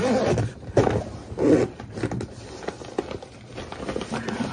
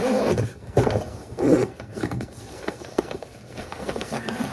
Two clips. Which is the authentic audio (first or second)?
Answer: first